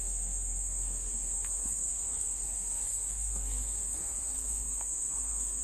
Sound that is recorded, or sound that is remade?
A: remade